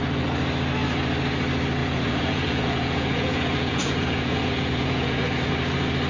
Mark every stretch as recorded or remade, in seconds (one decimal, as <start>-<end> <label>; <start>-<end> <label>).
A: 0.0-1.8 recorded; 1.8-5.5 remade; 5.5-6.1 recorded